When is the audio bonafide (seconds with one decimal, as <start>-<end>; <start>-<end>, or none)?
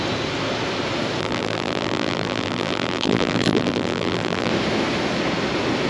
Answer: 0.0-1.2; 4.5-5.9